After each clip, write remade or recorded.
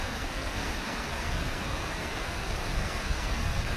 remade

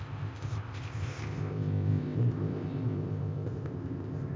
remade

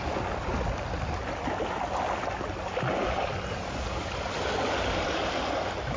recorded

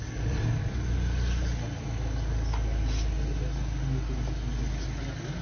recorded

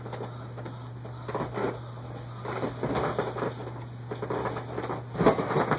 recorded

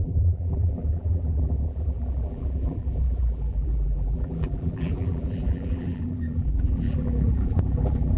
remade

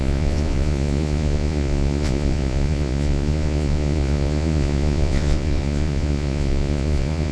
remade